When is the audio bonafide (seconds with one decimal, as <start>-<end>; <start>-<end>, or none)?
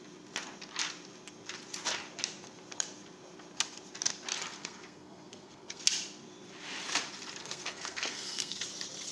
0.0-4.6; 5.8-7.4; 8.6-9.1